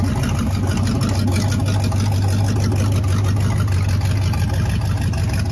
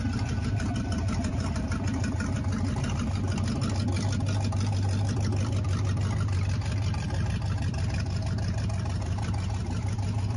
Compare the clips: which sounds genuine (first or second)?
first